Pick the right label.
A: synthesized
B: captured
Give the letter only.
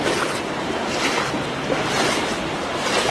B